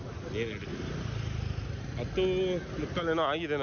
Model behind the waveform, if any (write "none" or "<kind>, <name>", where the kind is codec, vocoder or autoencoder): none